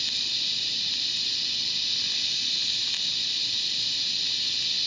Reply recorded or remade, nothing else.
recorded